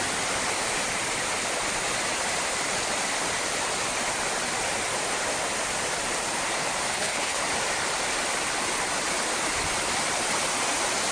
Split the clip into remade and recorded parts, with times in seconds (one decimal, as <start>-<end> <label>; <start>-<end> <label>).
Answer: 0.0-6.9 recorded; 6.9-7.4 remade; 7.4-11.1 recorded